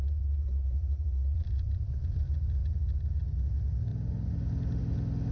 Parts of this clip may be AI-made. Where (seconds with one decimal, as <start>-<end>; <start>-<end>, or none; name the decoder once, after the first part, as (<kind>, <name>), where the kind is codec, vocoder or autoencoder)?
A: 1.2-2.2 (vocoder, BigVGAN v2); 2.6-3.4; 3.9-4.8